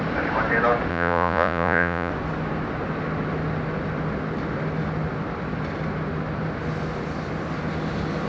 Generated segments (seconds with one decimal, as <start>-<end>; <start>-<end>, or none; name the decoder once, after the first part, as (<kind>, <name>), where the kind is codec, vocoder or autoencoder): 0.9-2.1 (vocoder, Vocos)